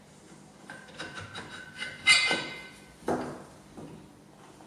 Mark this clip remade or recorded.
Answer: recorded